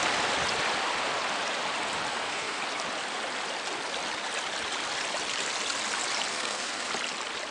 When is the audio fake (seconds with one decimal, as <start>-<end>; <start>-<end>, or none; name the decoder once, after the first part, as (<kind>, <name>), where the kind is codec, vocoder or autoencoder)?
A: 2.1-2.6 (codec, SNAC); 6.3-6.9